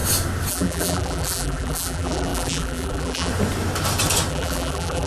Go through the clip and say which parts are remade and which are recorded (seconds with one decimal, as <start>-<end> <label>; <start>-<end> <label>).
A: 0.0-0.5 recorded; 0.5-3.3 remade; 3.3-4.3 recorded; 4.3-5.1 remade